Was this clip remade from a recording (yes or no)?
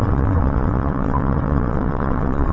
yes